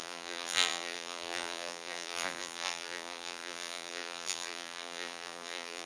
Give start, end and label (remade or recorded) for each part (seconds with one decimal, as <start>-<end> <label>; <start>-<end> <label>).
0.0-5.9 remade